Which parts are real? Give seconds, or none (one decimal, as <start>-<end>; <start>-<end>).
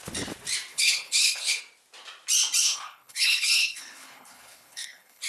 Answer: 0.0-0.7; 1.6-2.6